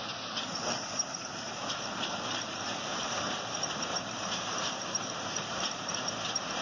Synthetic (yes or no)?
yes